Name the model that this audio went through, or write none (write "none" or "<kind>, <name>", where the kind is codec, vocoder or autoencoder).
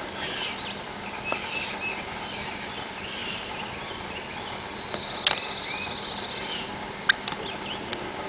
none